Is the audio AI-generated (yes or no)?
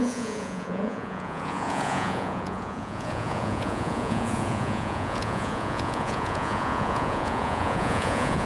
yes